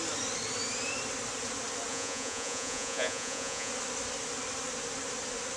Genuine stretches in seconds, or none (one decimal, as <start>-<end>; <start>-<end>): 0.0-1.9; 3.7-5.6